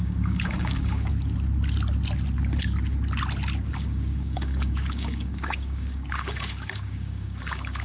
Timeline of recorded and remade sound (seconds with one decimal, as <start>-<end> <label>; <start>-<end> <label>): 0.0-1.1 remade; 1.1-3.7 recorded; 3.7-7.8 remade

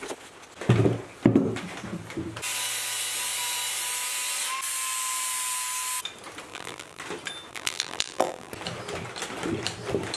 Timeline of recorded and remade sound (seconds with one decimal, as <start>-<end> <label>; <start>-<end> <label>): 0.0-6.5 recorded; 6.5-7.0 remade; 7.0-7.5 recorded; 7.5-8.5 remade; 8.5-10.2 recorded

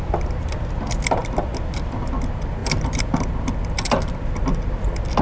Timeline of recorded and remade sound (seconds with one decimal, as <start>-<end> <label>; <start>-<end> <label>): 0.0-5.2 recorded

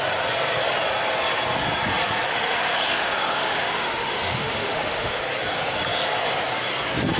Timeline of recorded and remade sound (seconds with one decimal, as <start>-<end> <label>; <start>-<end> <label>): 0.0-2.3 recorded; 2.3-5.2 remade; 5.2-7.2 recorded

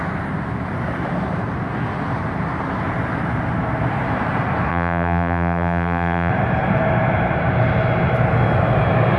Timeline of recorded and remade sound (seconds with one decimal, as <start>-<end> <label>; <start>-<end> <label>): 0.0-4.7 recorded; 4.7-6.3 remade; 6.3-9.2 recorded

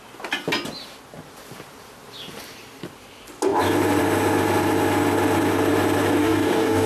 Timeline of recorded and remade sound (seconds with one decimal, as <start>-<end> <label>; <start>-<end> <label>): 0.0-6.2 recorded; 6.2-6.9 remade